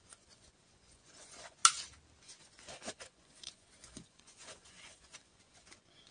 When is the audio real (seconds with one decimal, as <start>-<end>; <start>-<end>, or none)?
1.6-2.2